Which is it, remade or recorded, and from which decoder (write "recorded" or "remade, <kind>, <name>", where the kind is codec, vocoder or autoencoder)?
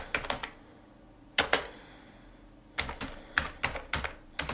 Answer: recorded